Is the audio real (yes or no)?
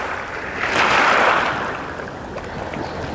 yes